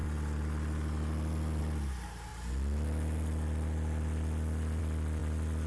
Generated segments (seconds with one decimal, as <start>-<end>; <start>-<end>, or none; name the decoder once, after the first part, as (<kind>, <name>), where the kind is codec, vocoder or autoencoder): none